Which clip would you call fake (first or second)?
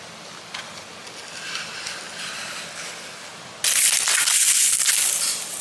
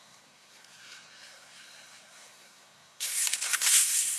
second